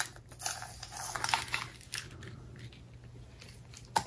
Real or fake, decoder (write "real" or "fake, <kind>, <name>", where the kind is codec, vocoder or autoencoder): real